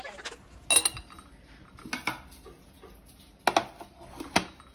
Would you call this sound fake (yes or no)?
no